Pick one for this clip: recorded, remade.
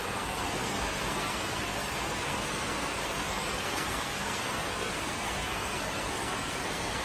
remade